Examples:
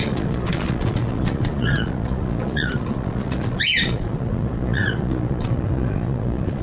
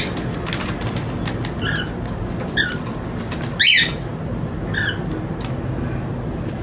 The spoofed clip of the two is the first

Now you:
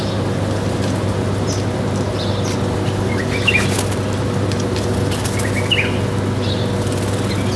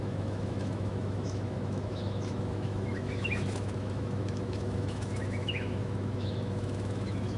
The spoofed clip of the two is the second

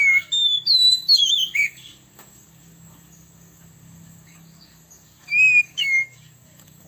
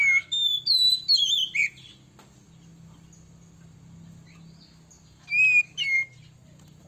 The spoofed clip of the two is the first